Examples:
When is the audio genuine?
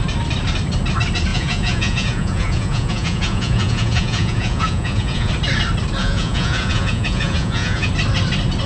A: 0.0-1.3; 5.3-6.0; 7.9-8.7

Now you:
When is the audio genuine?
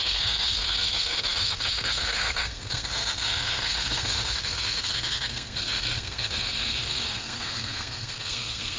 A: none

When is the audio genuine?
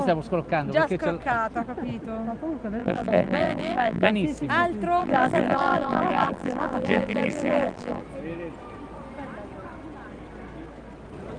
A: 0.0-2.8; 4.1-5.0; 8.0-11.4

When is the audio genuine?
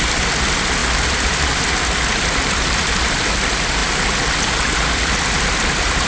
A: 0.0-6.1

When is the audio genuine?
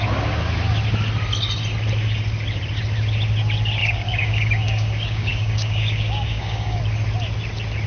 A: 0.0-3.8; 6.8-7.9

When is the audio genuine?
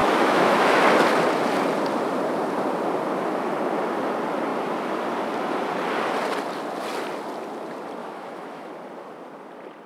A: 0.9-8.0; 8.7-9.9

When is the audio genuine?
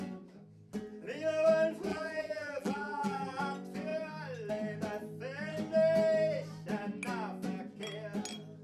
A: 0.0-1.9; 3.4-8.6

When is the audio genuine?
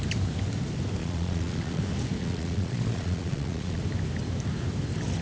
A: 0.0-1.0; 1.8-2.2; 3.8-5.2